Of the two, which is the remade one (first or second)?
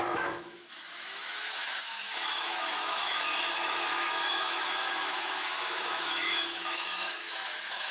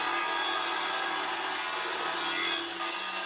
first